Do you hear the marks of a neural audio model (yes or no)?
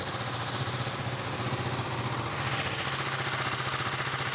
no